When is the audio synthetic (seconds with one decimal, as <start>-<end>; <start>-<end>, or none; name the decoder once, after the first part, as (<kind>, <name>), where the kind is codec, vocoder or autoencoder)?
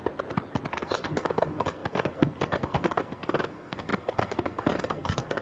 0.7-5.4 (codec, SNAC)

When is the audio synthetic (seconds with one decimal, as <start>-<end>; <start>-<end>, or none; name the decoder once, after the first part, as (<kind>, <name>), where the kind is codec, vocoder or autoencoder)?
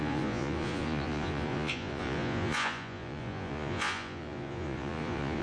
0.0-5.4 (vocoder, Vocos)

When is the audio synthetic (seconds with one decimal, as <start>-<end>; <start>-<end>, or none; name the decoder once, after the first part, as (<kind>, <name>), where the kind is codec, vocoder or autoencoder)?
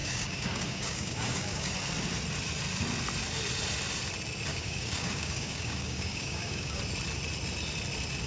0.0-1.7 (codec, DAC); 4.5-6.8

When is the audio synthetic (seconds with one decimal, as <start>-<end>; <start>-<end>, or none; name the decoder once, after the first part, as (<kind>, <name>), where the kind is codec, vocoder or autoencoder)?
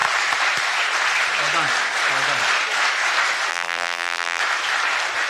3.5-4.4 (vocoder, BigVGAN v2)